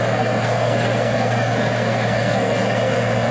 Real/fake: fake